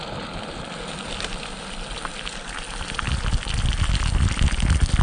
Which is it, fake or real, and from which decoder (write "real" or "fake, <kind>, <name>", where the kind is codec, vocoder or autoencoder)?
real